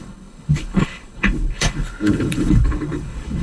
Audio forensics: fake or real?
fake